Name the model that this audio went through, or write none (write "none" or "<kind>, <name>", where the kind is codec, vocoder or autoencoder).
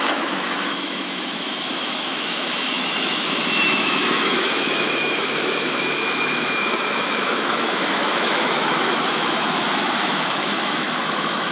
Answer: autoencoder, DAC-VAE